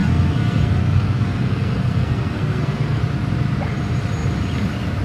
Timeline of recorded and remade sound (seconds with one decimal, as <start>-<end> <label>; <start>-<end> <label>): 0.0-3.0 remade; 3.0-5.0 recorded